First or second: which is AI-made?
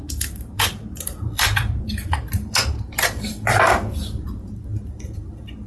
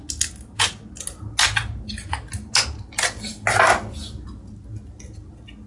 first